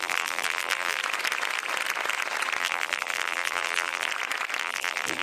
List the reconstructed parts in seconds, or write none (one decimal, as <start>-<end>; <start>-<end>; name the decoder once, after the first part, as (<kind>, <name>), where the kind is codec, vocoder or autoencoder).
0.0-1.0 (vocoder, BigVGAN v2); 2.6-4.1; 4.6-5.2